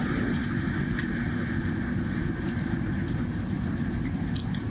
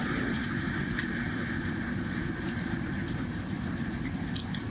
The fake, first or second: second